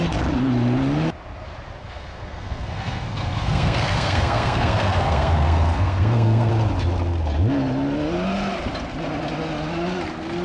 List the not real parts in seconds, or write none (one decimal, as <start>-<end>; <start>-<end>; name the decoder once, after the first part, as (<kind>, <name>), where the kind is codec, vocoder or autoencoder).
1.8-6.5 (codec, SNAC)